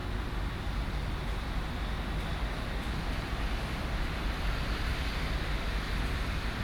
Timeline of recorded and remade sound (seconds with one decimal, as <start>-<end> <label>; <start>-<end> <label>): 0.0-6.6 recorded